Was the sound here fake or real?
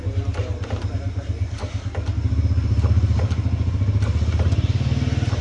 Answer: real